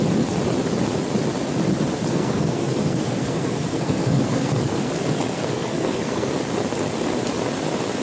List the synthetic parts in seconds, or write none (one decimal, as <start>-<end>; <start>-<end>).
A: 2.1-6.3